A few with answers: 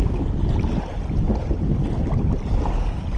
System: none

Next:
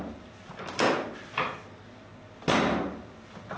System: none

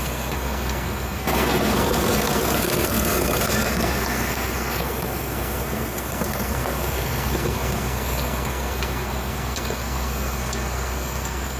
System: codec, SNAC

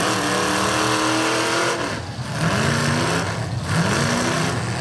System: none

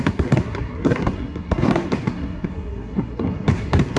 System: codec, SNAC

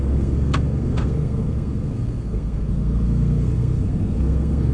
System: codec, SNAC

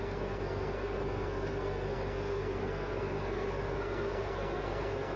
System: codec, SNAC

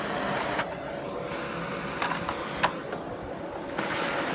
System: none